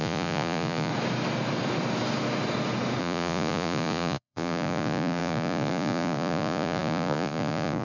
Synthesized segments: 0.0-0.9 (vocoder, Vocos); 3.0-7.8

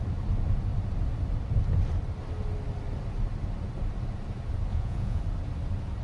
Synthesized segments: 4.7-5.2 (vocoder, Vocos)

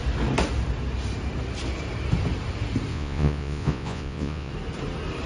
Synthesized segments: 2.9-4.5 (vocoder, Vocos)

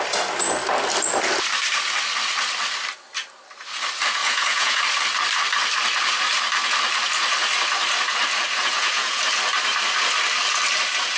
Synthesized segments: 4.2-4.8 (vocoder, Vocos); 8.6-9.2

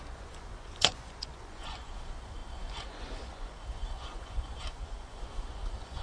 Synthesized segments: 0.0-6.0 (vocoder, Vocos)

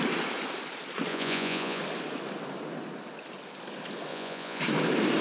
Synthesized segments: 1.1-1.8 (vocoder, Vocos); 4.1-4.6